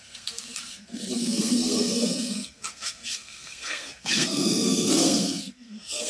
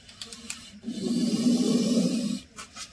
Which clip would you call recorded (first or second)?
second